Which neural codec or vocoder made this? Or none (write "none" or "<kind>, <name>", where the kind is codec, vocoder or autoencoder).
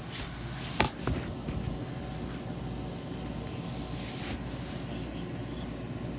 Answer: none